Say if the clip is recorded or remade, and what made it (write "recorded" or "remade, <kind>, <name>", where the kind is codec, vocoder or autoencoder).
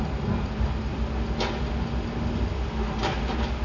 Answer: recorded